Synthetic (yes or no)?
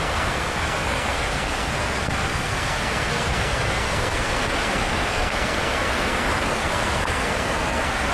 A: yes